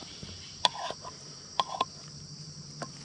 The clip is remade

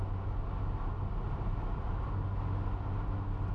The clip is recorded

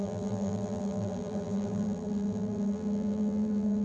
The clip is remade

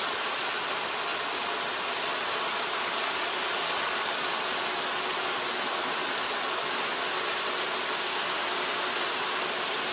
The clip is recorded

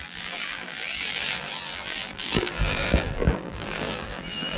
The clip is remade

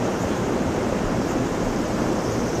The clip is remade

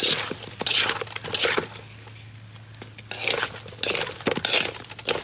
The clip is recorded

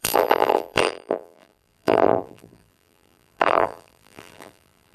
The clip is remade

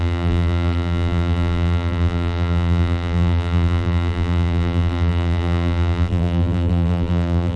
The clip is remade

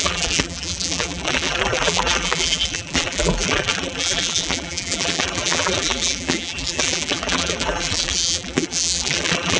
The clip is remade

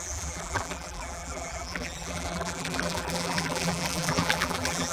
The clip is remade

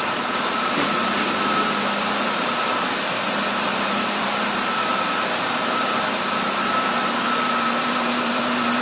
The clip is remade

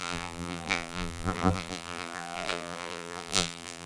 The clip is remade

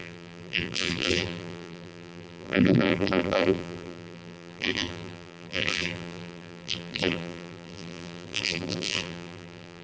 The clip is remade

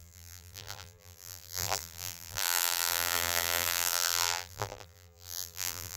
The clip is remade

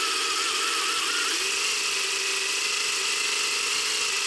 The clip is recorded